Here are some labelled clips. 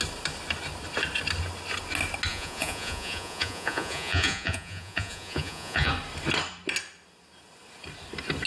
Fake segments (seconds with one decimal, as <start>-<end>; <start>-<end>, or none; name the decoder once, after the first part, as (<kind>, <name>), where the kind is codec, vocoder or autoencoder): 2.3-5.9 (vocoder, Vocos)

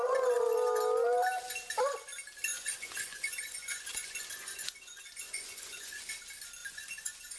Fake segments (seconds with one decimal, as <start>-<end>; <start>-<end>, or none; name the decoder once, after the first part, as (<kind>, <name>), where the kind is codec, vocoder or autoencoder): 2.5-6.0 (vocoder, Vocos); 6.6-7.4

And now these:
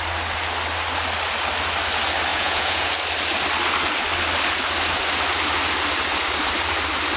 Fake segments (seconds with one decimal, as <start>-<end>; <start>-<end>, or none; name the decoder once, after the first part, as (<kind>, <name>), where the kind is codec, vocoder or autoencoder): 2.3-2.9 (vocoder, Vocos)

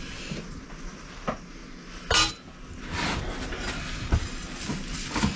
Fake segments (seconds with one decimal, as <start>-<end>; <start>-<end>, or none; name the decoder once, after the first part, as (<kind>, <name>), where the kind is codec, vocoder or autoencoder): none

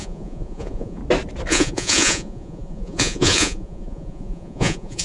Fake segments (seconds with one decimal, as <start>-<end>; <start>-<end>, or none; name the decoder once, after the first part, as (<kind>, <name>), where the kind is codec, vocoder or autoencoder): 0.0-1.0 (vocoder, Vocos); 1.5-5.0

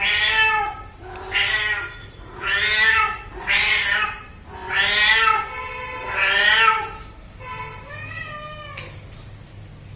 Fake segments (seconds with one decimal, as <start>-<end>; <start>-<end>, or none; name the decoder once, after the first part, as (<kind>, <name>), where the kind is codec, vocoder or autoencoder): 2.0-2.5 (vocoder, Vocos); 2.9-3.5

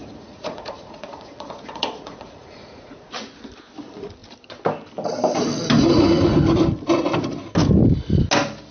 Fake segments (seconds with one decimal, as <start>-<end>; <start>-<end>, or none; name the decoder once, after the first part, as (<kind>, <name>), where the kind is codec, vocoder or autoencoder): 0.0-3.1 (vocoder, Vocos)

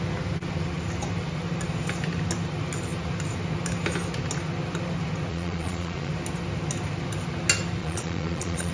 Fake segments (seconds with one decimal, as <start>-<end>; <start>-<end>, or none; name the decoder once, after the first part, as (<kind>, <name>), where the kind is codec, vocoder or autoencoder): 5.3-6.1 (vocoder, Vocos); 7.8-8.7